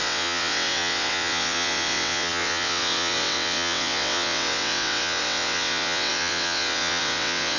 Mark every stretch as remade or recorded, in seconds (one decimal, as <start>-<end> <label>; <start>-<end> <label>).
0.0-7.6 remade